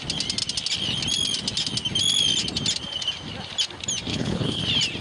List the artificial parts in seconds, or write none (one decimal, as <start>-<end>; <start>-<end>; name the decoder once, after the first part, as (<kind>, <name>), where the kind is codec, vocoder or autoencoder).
4.1-4.6 (codec, HILCodec)